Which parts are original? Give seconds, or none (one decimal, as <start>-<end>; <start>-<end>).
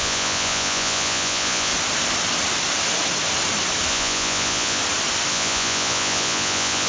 1.7-3.9; 4.8-5.3